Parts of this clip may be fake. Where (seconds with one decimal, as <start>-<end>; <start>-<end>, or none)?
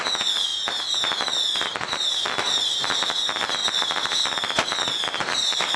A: none